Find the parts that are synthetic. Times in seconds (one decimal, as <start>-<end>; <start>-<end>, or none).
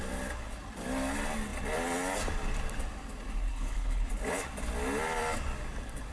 3.5-4.1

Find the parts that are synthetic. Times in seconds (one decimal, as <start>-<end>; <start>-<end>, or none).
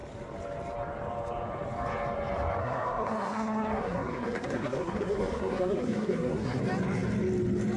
2.6-6.6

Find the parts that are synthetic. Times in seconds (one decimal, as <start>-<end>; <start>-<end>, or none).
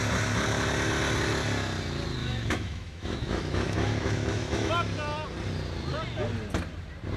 2.2-4.7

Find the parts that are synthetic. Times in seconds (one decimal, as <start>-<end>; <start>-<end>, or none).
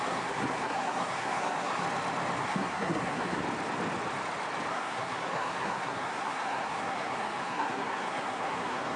0.0-1.8; 2.4-3.4; 4.7-9.0